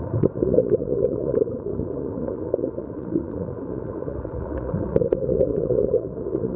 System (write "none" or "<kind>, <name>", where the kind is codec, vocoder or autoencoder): vocoder, Vocos